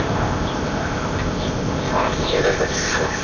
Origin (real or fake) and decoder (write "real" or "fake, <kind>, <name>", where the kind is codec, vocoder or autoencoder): fake, codec, ZipCodec